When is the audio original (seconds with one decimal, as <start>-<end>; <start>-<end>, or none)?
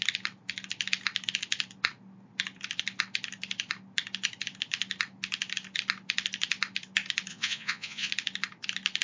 0.0-7.3; 8.1-9.0